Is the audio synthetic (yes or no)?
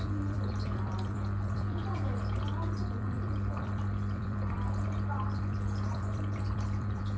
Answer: yes